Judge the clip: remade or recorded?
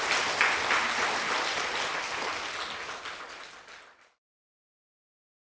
recorded